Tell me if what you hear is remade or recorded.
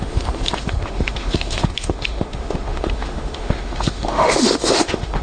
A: remade